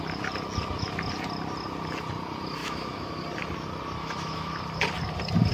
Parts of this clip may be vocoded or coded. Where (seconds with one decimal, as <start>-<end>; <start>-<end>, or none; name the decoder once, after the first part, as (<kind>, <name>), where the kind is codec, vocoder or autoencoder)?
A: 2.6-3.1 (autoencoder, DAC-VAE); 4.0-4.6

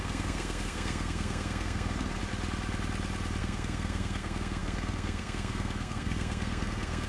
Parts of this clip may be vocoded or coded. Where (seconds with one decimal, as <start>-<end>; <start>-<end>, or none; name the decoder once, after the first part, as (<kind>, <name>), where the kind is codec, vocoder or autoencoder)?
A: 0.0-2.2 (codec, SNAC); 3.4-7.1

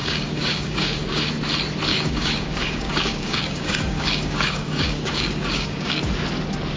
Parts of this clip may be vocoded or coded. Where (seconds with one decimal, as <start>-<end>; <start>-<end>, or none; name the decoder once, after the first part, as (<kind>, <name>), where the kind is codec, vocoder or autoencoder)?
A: 0.0-1.3 (codec, DAC); 1.9-6.0

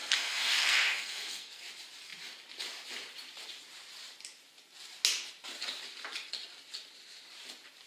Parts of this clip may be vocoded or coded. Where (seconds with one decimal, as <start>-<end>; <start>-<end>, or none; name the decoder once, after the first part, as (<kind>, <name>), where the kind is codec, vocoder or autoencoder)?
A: 0.0-1.7 (codec, SNAC)

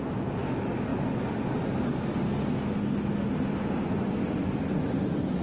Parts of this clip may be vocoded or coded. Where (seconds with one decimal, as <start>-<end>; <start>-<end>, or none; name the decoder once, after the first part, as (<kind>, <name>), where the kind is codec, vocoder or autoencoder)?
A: none